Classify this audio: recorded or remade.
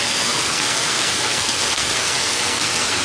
remade